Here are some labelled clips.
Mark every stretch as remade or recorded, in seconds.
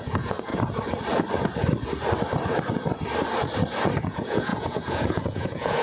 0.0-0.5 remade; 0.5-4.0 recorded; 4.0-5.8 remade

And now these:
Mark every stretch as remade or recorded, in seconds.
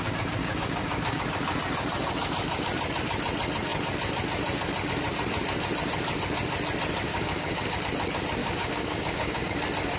0.0-0.4 recorded; 0.4-1.2 remade; 1.2-7.1 recorded; 7.1-7.8 remade; 7.8-8.4 recorded; 8.4-9.5 remade; 9.5-10.0 recorded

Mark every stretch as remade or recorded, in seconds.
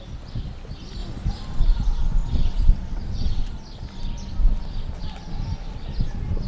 0.0-2.2 recorded; 2.2-3.5 remade; 3.5-6.5 recorded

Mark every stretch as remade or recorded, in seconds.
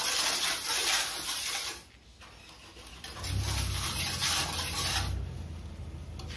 0.0-6.4 recorded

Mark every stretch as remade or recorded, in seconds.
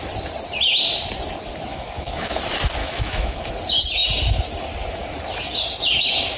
0.0-1.7 recorded; 1.7-2.4 remade; 2.4-2.8 recorded; 2.8-3.5 remade; 3.5-6.4 recorded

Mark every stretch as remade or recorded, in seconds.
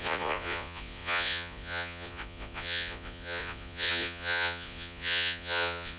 0.0-6.0 remade